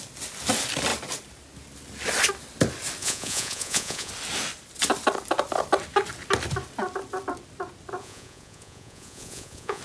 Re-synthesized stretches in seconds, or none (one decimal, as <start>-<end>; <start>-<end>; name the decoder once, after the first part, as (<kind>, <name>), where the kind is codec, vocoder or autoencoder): 3.0-4.1 (vocoder, Vocos); 8.0-9.8